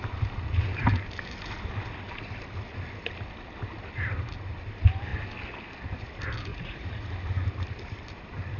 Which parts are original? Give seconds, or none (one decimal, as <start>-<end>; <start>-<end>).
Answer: 0.0-6.5; 7.1-8.6